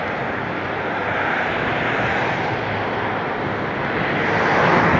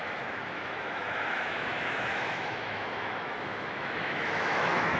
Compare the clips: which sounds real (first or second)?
first